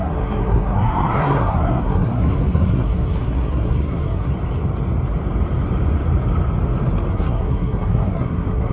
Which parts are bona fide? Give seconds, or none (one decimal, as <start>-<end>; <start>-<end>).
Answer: 4.3-7.1